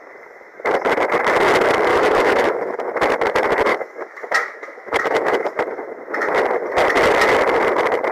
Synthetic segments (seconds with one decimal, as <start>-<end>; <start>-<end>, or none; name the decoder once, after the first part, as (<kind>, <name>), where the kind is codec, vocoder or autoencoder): 1.9-2.8 (autoencoder, DAC-VAE); 3.7-5.6